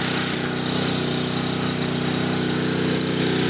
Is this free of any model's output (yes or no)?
yes